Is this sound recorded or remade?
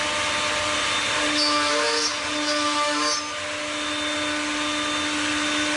recorded